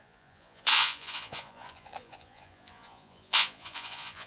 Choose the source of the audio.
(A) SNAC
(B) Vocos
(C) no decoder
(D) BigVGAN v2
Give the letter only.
B